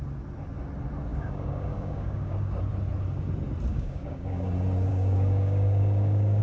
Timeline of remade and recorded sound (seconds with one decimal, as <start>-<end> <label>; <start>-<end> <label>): 0.0-1.1 recorded; 1.1-2.6 remade; 2.6-3.7 recorded; 3.7-4.5 remade; 4.5-4.9 recorded; 4.9-6.4 remade

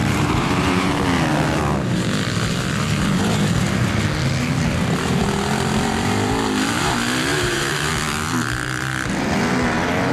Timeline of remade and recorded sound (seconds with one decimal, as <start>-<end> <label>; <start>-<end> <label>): 0.0-0.9 remade; 0.9-7.3 recorded; 7.3-7.9 remade; 7.9-10.1 recorded

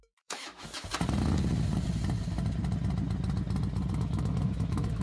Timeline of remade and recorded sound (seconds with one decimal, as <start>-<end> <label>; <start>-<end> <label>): 0.0-0.9 remade; 0.9-3.9 recorded; 3.9-5.0 remade

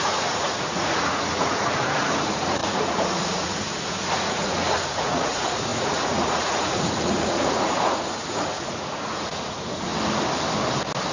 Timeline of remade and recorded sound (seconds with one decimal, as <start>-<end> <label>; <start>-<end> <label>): 0.0-9.9 remade; 9.9-11.1 recorded

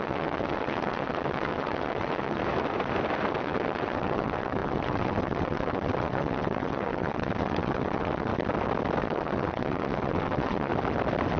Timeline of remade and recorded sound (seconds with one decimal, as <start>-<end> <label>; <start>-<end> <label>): 0.0-2.4 remade; 2.4-3.3 recorded; 3.3-8.3 remade; 8.3-9.0 recorded; 9.0-10.7 remade; 10.7-11.4 recorded

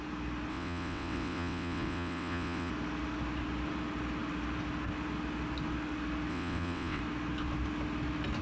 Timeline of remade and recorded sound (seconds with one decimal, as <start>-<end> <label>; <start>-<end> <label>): 0.0-0.5 recorded; 0.5-2.7 remade; 2.7-6.3 recorded; 6.3-7.0 remade; 7.0-8.4 recorded